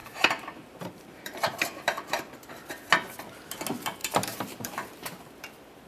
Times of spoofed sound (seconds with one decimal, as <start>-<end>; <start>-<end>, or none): 0.0-2.5; 4.0-5.9